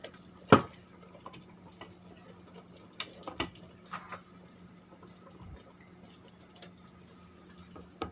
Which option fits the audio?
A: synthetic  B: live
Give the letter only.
B